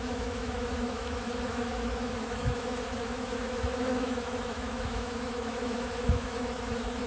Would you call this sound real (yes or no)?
no